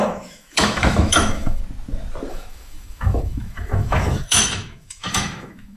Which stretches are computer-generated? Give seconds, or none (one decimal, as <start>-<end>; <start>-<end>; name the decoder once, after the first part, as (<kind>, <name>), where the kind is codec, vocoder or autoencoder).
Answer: 0.0-1.6 (autoencoder, DAC-VAE); 2.3-5.8